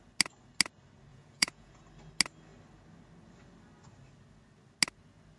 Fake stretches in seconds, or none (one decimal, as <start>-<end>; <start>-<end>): 1.1-1.8